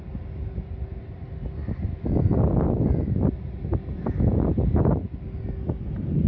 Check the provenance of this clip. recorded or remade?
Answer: recorded